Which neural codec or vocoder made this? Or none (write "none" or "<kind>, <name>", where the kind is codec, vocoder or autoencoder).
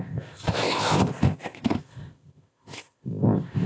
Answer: codec, ZipCodec